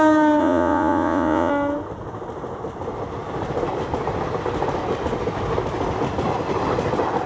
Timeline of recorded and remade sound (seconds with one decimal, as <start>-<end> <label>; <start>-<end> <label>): 0.0-0.4 recorded; 0.4-1.5 remade; 1.5-7.3 recorded